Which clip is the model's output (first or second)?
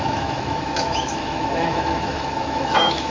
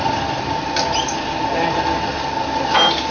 first